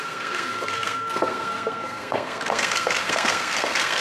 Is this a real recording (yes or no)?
no